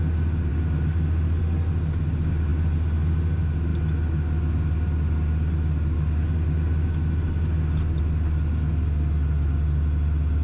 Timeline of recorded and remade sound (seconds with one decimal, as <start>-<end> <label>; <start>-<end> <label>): 0.0-10.4 recorded